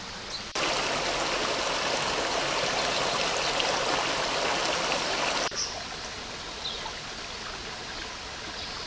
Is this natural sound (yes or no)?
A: yes